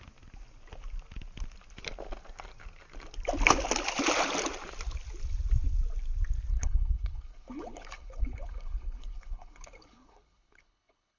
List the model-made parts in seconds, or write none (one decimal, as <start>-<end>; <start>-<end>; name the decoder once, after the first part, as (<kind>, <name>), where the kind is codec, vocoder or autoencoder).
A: 6.5-11.2 (codec, HILCodec)